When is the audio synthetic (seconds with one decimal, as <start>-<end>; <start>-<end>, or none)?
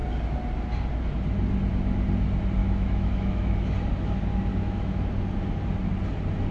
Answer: 2.6-3.7; 4.5-5.0